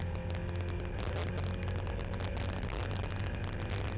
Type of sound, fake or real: real